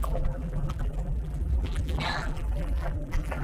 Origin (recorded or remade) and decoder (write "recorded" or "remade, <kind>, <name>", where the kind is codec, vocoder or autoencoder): remade, vocoder, BigVGAN v2